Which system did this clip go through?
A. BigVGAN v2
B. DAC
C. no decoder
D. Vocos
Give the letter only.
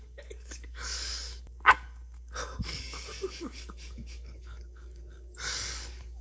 B